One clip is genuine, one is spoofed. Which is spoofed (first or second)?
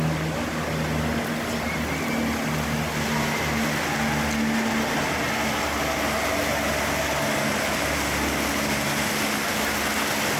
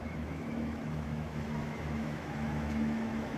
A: second